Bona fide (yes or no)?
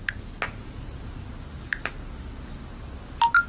yes